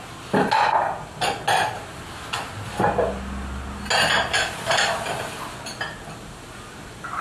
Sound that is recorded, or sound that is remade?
recorded